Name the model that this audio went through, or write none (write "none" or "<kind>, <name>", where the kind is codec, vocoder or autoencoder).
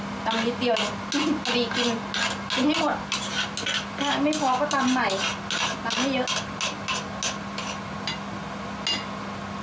none